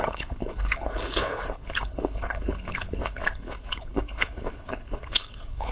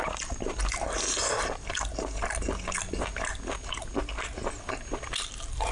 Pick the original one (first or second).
second